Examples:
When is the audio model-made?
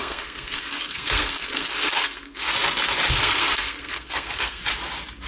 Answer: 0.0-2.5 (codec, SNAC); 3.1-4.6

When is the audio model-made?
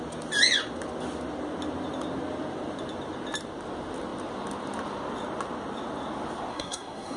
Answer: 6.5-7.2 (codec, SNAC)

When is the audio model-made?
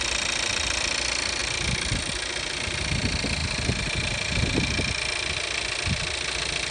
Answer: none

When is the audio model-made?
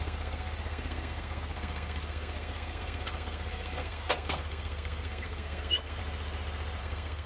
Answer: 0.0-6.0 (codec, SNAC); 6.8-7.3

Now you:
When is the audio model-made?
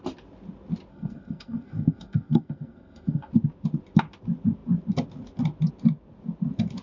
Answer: 0.9-3.3 (codec, SNAC)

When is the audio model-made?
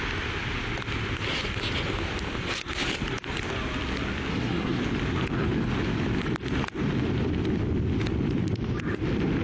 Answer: 4.3-4.8 (codec, SNAC)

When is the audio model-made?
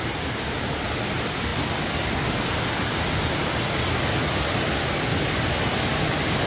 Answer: none